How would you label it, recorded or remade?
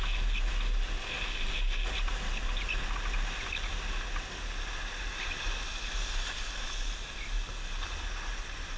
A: recorded